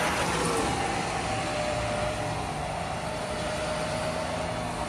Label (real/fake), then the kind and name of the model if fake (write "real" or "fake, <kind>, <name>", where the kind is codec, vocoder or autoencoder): real